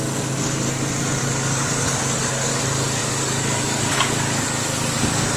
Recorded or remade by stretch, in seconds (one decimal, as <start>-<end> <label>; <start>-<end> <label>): 0.0-1.2 recorded; 1.2-2.6 remade; 2.6-3.0 recorded; 3.0-5.4 remade